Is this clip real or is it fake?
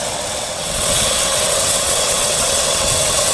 fake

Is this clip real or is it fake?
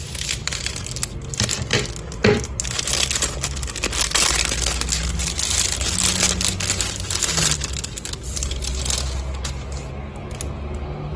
real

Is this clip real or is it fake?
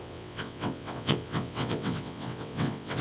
fake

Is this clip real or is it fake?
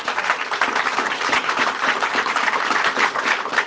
real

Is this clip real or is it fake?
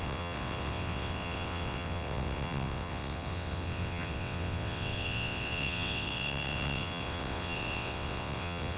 fake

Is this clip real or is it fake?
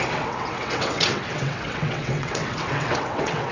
fake